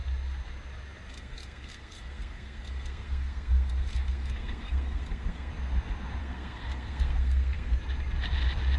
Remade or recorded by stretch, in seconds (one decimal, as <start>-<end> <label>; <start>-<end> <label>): 0.0-1.1 recorded; 1.1-5.5 remade; 5.5-6.2 recorded; 6.2-7.8 remade; 7.8-8.8 recorded